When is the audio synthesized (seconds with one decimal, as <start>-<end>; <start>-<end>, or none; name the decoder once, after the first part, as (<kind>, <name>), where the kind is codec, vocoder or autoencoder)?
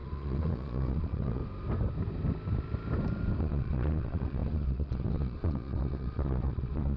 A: 0.0-1.4 (vocoder, Vocos); 3.4-7.0